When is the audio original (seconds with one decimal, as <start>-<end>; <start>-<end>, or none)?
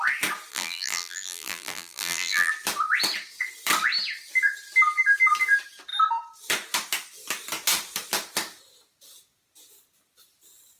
0.0-0.5; 2.5-10.8